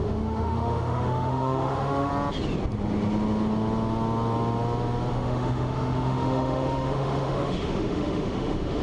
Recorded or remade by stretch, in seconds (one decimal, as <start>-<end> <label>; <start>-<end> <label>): 0.0-2.1 remade; 2.1-5.1 recorded; 5.1-8.8 remade